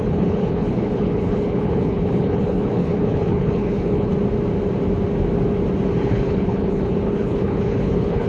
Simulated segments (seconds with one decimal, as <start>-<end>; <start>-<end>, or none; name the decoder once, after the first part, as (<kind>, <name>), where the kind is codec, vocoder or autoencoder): 0.0-4.1 (codec, HILCodec); 6.1-8.3